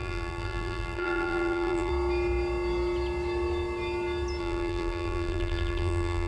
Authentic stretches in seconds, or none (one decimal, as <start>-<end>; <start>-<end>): 1.9-4.4